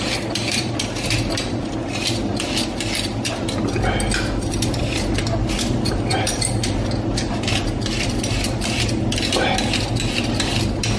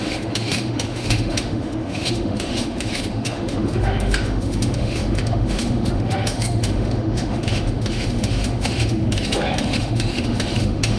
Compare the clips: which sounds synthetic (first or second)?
second